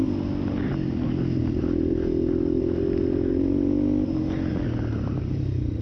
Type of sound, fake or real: real